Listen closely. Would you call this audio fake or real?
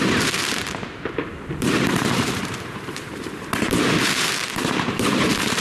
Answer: fake